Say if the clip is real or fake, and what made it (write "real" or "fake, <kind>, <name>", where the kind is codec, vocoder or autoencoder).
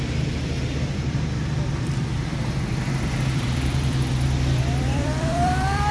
fake, vocoder, BigVGAN v2